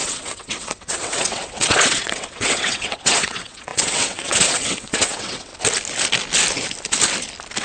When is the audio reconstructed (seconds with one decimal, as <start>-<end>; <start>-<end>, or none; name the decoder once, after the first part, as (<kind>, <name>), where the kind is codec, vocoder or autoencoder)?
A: 0.0-5.5 (vocoder, WaveNeXt)